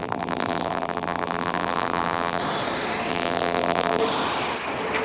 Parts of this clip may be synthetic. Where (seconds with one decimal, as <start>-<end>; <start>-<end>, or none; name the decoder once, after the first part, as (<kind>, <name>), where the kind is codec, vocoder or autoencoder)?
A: 0.0-2.4 (vocoder, BigVGAN v2); 3.1-4.0